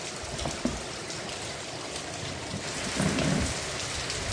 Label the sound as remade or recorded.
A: recorded